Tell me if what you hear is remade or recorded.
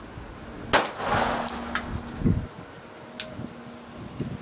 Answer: recorded